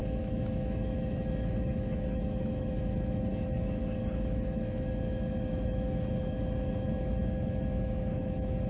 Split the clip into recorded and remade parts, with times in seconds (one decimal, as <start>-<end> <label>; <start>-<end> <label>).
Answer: 0.0-8.7 remade